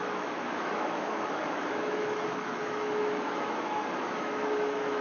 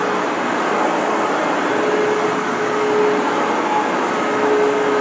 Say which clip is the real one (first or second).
second